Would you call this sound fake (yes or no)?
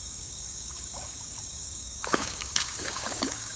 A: yes